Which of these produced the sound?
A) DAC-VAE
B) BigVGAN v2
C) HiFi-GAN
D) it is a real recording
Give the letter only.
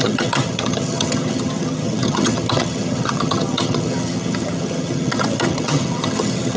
C